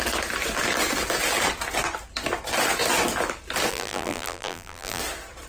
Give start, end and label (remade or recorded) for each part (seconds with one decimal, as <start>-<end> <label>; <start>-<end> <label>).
0.0-3.7 recorded; 3.7-5.0 remade; 5.0-5.5 recorded